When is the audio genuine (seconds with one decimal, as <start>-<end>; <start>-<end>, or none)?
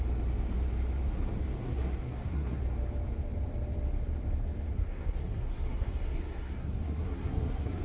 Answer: 0.0-1.6; 2.6-4.7